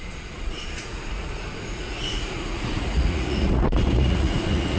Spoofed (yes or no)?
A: yes